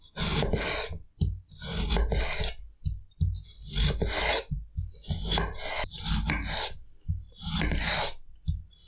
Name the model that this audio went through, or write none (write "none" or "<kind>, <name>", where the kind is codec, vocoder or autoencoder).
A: none